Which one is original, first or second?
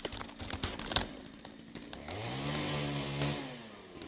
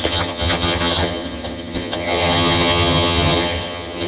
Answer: first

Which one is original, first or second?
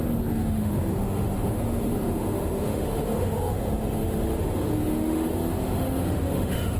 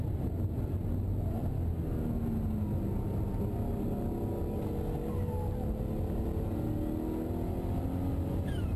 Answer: second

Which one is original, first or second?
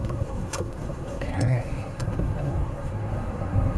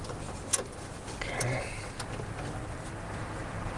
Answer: second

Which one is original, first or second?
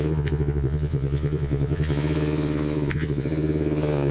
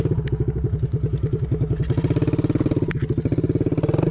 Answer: second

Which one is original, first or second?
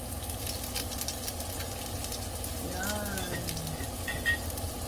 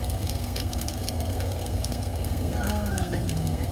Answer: first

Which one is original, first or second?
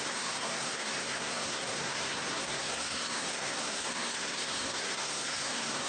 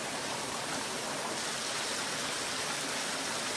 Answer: second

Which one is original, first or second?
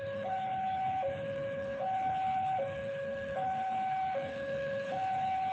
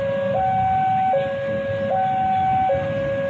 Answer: second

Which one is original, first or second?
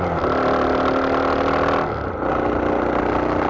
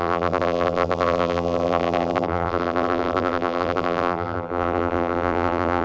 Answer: first